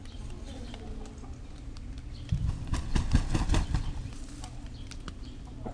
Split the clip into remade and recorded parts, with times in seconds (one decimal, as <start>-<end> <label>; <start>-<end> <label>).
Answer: 0.0-5.7 recorded